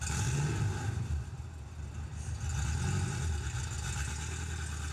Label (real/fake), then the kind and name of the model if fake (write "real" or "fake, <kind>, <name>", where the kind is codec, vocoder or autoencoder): real